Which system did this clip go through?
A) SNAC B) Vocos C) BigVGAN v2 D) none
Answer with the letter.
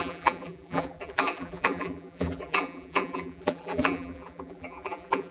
C